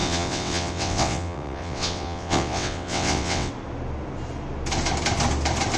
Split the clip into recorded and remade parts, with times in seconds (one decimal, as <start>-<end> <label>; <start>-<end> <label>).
0.0-3.5 remade; 3.5-5.8 recorded